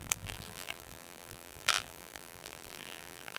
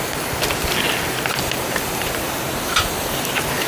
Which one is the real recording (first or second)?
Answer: second